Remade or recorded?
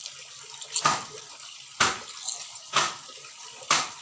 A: recorded